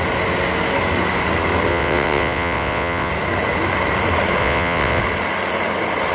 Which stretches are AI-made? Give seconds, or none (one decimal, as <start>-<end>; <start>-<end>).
1.7-3.1; 4.4-5.0